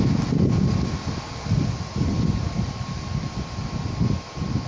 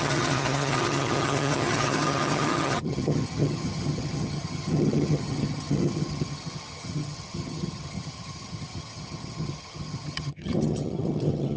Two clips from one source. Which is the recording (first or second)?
first